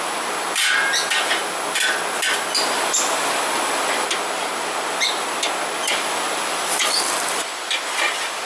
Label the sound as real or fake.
real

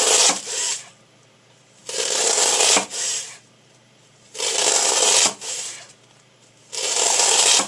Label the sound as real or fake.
fake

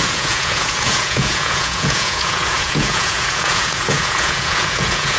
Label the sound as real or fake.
fake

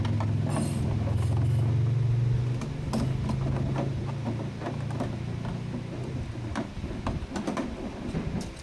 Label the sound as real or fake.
real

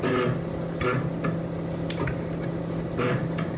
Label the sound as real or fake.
real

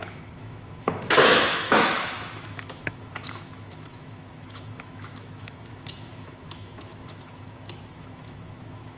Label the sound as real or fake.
fake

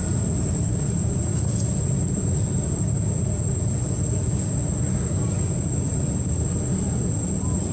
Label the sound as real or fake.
real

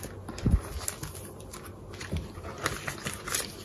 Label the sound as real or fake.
real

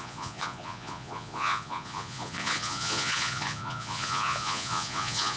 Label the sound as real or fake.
fake